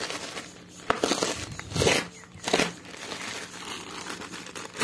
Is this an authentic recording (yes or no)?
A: yes